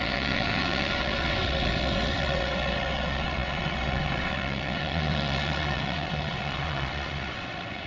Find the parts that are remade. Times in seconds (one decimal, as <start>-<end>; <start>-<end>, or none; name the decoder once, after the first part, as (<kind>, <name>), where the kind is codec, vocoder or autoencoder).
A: 0.0-7.9 (vocoder, WaveNeXt)